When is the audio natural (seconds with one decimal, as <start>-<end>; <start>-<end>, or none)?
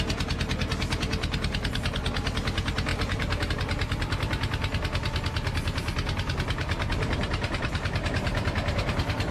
0.0-2.9; 3.5-6.6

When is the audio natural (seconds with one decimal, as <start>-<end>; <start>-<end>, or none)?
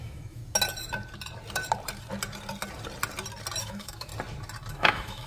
0.4-3.6; 4.1-4.7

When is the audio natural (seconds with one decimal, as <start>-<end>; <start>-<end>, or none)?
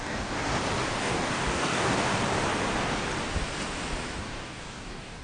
0.5-1.0; 2.1-4.2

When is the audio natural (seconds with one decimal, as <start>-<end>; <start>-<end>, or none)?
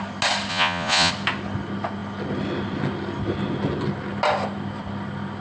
0.0-0.5; 1.1-5.4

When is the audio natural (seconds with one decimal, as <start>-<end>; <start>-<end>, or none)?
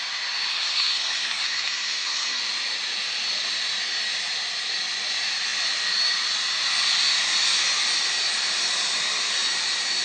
0.0-0.5; 2.4-10.0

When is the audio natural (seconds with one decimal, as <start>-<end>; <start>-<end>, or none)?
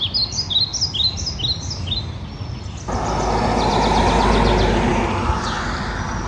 0.0-6.3